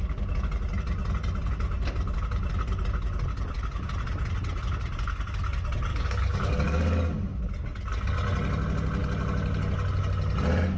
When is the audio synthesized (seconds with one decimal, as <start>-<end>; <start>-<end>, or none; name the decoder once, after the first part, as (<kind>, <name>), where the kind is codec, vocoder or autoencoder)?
5.9-7.4 (codec, DAC)